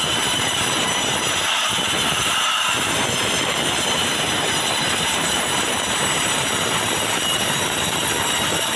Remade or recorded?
remade